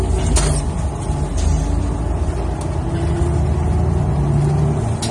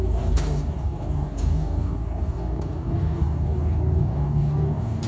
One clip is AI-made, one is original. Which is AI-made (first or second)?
second